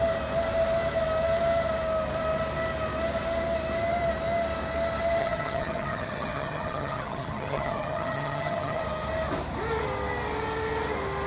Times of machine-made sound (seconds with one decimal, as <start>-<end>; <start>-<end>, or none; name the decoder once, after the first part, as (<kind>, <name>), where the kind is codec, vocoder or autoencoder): 5.2-8.8 (vocoder, HiFi-GAN)

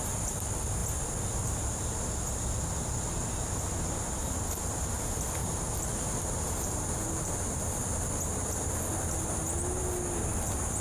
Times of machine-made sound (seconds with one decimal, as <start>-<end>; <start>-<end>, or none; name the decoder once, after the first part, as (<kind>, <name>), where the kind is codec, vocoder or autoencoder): 5.4-7.8 (vocoder, BigVGAN v2)

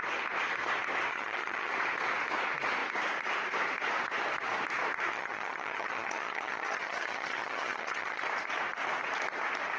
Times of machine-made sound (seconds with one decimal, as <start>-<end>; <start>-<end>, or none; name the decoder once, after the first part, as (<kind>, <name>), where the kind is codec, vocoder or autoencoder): 1.1-1.7 (vocoder, HiFi-GAN); 5.1-8.2